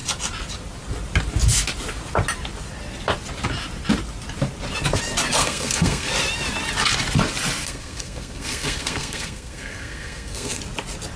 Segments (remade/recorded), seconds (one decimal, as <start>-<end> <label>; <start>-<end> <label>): 0.0-5.4 recorded; 5.4-6.1 remade; 6.1-7.6 recorded; 7.6-10.6 remade; 10.6-11.2 recorded